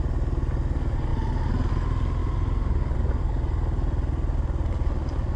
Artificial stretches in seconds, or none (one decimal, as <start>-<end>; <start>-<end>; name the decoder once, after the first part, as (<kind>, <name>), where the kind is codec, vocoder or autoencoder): none